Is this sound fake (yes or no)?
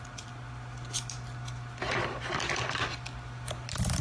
no